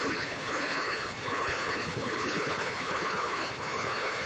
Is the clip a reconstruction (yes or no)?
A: yes